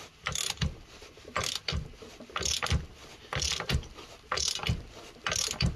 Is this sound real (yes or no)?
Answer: yes